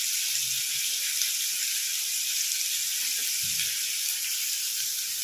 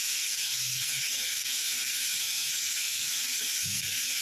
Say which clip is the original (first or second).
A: first